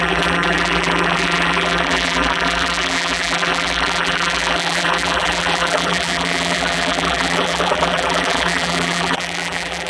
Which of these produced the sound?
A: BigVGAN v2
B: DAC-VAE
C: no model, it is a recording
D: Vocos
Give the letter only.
A